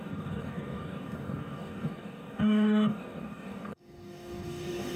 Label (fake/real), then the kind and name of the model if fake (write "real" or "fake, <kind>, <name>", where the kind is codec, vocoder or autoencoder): fake, codec, DAC